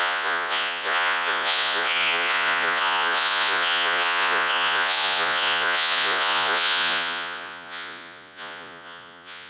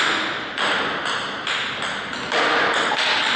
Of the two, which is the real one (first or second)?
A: second